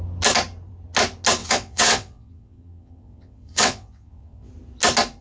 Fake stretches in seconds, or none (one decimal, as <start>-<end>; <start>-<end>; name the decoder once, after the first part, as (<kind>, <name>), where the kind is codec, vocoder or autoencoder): 1.4-4.5 (vocoder, WaveNeXt)